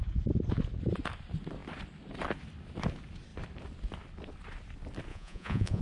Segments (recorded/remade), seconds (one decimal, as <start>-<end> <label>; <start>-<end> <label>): 0.0-5.1 recorded; 5.1-5.8 remade